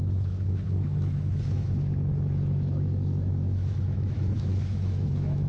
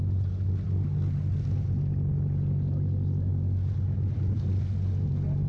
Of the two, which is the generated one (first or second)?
first